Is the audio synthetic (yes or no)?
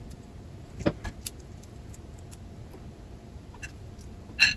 no